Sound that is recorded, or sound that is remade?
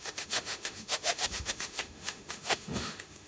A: remade